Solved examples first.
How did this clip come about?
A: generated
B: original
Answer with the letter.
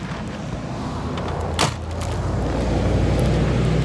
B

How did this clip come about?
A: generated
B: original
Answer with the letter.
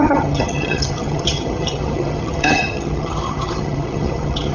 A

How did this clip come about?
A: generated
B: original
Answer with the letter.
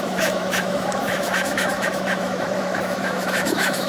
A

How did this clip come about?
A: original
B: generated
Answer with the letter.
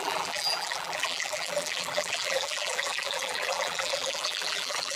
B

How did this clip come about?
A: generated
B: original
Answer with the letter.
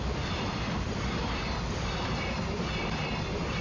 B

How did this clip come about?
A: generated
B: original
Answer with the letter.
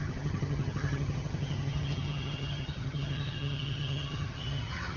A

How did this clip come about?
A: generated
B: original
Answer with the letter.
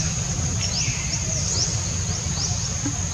B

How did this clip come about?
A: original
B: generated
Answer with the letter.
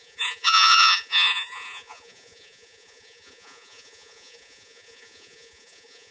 B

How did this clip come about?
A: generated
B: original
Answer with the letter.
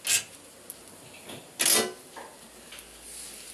B